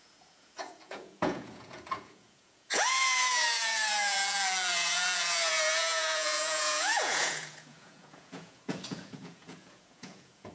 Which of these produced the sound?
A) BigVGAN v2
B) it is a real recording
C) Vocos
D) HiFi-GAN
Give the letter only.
C